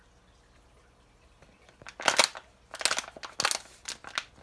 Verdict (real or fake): real